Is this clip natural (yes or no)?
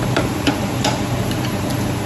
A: no